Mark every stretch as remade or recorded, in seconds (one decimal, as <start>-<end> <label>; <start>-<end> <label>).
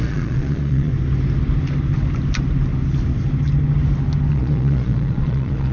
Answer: 0.0-0.9 remade; 0.9-4.3 recorded; 4.3-5.7 remade